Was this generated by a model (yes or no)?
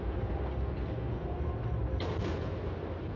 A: no